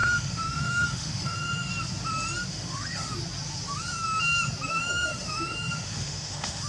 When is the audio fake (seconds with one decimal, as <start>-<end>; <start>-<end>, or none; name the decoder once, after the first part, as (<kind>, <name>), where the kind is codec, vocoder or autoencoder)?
0.0-1.7 (autoencoder, DAC-VAE); 2.5-3.1; 4.7-6.7